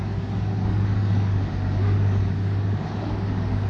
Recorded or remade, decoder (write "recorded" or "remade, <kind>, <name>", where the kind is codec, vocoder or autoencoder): remade, codec, DAC